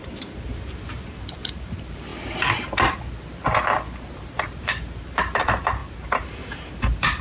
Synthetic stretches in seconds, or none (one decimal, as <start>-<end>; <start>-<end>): 0.0-2.1; 4.6-7.2